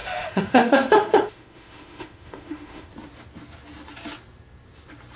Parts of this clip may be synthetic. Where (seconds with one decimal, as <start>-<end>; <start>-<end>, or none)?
0.0-2.9